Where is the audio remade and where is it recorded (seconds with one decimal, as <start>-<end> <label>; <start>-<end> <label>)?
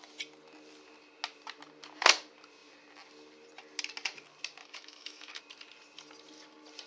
0.0-4.6 recorded; 4.6-5.4 remade; 5.4-6.9 recorded